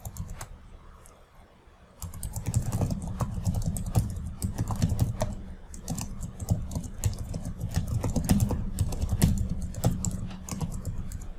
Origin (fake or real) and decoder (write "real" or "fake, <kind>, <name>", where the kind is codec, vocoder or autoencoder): real